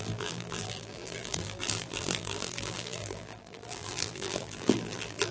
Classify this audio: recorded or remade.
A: remade